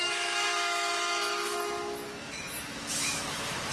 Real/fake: fake